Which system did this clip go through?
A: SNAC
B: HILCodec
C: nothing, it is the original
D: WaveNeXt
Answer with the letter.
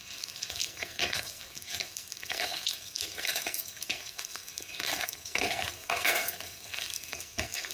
A